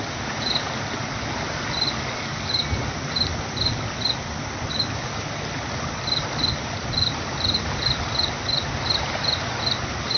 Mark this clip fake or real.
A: real